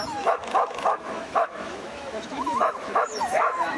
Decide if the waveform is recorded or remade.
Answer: remade